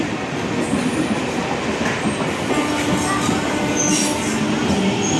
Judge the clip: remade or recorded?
recorded